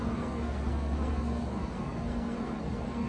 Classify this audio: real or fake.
fake